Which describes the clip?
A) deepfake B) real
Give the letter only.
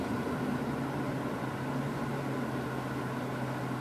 B